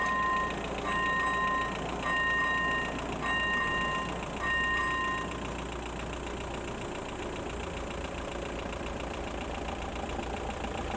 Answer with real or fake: real